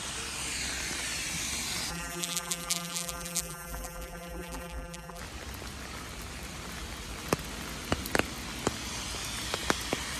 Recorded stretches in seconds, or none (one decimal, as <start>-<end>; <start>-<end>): 0.0-1.9; 5.2-10.2